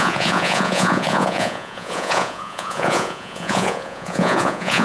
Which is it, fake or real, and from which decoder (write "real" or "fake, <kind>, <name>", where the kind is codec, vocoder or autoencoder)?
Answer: fake, vocoder, Vocos